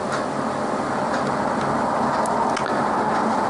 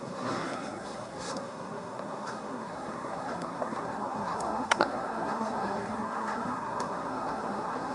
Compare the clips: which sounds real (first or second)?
first